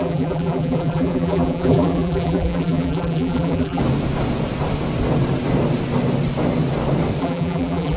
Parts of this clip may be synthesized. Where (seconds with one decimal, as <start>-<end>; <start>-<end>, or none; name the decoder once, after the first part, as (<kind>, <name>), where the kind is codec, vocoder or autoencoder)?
0.0-3.8 (vocoder, BigVGAN v2); 7.2-8.0